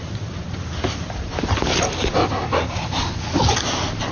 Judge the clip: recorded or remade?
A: recorded